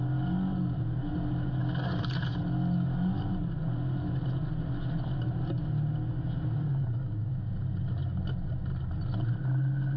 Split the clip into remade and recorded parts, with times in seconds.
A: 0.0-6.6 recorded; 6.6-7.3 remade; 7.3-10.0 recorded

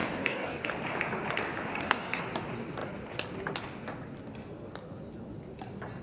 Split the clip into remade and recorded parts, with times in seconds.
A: 0.0-0.7 remade; 0.7-1.7 recorded; 1.7-2.2 remade; 2.2-6.0 recorded